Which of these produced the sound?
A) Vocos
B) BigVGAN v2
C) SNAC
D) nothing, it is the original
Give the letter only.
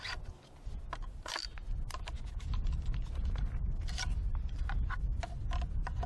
D